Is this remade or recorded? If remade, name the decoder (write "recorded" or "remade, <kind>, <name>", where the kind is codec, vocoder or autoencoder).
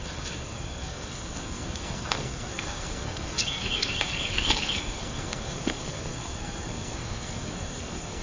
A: remade, codec, SNAC